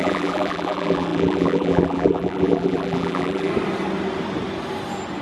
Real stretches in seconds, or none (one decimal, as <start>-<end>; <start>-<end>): 3.5-5.2